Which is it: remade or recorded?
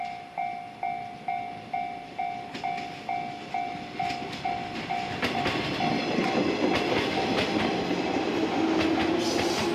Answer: recorded